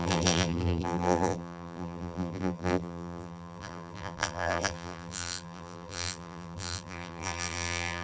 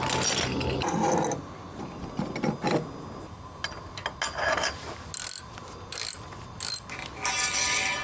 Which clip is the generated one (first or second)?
first